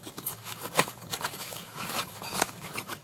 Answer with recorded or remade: remade